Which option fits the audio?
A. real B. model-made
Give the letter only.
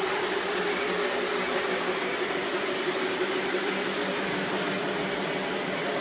A